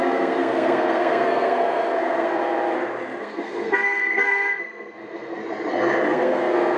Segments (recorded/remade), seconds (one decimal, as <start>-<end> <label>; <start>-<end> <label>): 0.0-2.4 remade; 2.4-3.2 recorded; 3.2-5.4 remade; 5.4-6.1 recorded; 6.1-6.8 remade